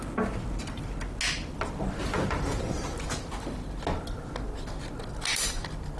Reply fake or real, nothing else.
real